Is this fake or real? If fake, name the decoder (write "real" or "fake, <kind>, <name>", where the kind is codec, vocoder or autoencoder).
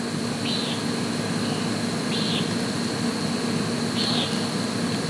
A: real